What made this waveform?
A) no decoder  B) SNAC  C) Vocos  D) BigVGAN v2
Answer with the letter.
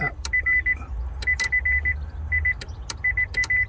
A